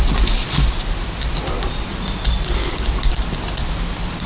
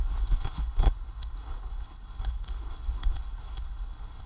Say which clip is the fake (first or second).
second